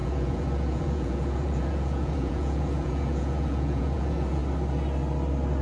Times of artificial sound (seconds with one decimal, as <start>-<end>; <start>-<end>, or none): 0.0-4.4

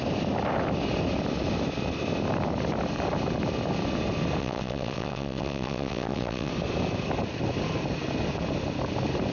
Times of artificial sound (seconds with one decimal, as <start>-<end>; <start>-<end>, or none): 4.4-6.5

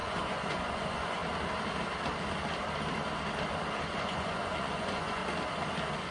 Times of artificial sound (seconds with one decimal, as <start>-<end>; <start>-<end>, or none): 0.0-1.2; 3.9-5.2

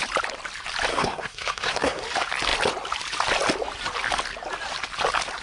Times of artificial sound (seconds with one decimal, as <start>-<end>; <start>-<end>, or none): 0.9-2.0